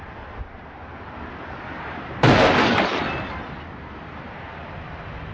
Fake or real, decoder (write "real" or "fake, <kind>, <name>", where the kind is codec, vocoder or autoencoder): real